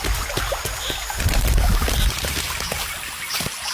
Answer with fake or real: real